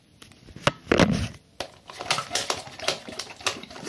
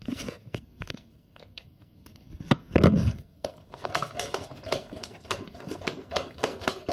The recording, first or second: first